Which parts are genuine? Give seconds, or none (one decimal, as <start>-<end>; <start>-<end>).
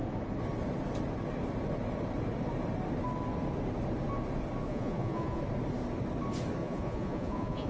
0.0-4.7; 5.4-6.6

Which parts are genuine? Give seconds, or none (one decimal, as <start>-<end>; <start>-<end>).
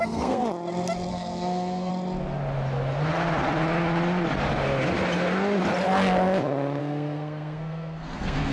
0.4-1.1; 1.9-6.8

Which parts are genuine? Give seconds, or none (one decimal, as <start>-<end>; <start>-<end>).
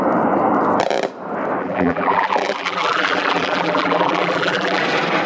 0.0-1.6; 4.8-5.3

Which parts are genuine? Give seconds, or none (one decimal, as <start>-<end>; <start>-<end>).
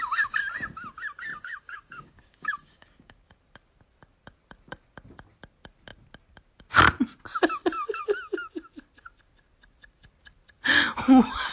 0.0-1.3; 3.3-11.5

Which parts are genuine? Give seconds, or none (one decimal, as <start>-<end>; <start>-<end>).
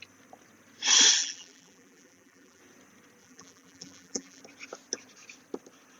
0.0-1.2; 2.6-3.2; 4.4-6.0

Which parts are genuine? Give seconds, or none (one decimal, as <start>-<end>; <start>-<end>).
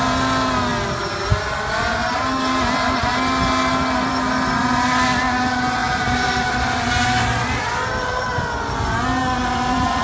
0.0-10.0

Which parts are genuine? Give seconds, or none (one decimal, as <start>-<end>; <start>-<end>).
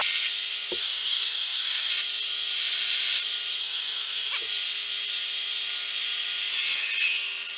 0.0-0.8; 1.9-3.6; 4.3-7.6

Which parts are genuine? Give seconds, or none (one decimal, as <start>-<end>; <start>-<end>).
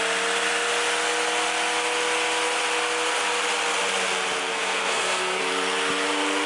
0.0-4.5; 5.4-6.5